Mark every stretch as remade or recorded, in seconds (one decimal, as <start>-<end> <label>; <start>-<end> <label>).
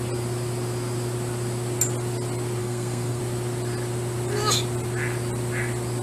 0.0-2.6 recorded; 2.6-3.2 remade; 3.2-6.0 recorded